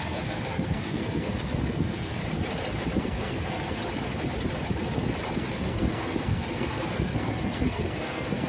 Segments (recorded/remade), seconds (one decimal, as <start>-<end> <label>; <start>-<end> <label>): 0.0-2.2 remade; 2.2-3.0 recorded; 3.0-3.8 remade; 3.8-5.3 recorded; 5.3-8.5 remade